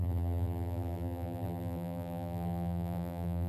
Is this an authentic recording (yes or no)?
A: no